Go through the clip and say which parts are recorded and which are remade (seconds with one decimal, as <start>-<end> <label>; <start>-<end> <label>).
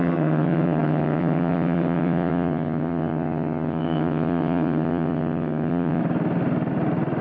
0.0-6.0 remade; 6.0-7.2 recorded